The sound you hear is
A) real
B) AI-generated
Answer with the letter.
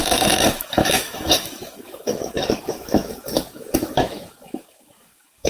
B